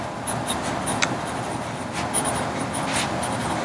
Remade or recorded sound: recorded